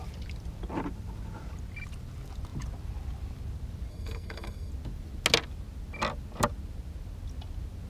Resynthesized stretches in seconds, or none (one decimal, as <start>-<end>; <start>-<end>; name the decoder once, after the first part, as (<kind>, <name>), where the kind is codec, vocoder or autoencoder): 3.9-4.7 (codec, SNAC)